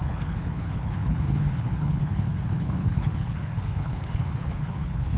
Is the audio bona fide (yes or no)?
no